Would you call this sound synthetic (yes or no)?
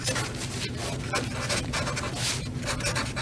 no